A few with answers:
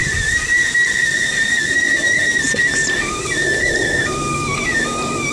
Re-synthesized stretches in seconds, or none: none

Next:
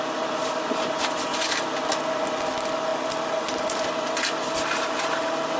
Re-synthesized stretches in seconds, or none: none